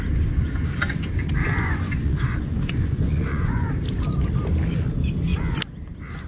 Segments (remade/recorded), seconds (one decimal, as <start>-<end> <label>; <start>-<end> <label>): 0.0-1.4 recorded; 1.4-3.7 remade; 3.7-6.3 recorded